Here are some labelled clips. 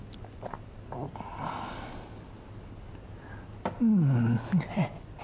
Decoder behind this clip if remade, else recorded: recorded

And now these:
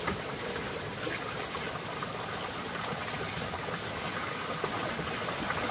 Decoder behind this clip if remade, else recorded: recorded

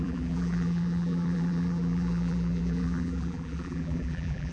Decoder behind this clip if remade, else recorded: remade, vocoder, BigVGAN v2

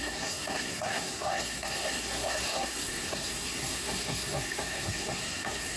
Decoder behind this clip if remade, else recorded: remade, codec, SNAC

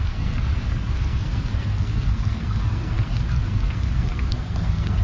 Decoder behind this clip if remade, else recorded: remade, codec, SNAC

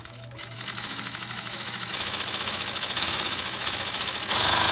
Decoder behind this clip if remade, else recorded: remade, autoencoder, DAC-VAE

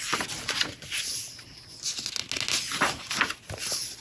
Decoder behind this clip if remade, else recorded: recorded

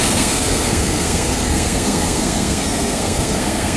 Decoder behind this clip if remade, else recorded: remade, codec, SNAC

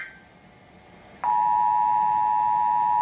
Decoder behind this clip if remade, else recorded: recorded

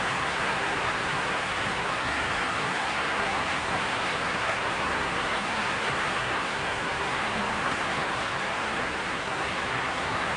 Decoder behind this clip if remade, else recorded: remade, codec, SNAC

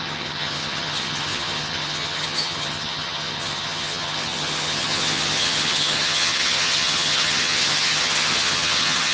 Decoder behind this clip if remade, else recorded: remade, vocoder, HiFi-GAN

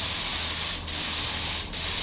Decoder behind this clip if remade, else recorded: recorded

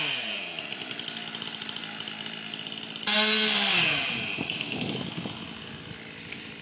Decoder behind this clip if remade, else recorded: recorded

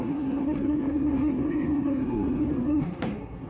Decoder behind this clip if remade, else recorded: remade, codec, SNAC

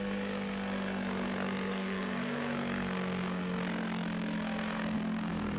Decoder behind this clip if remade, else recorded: remade, codec, SNAC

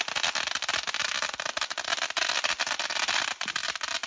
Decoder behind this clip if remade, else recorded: recorded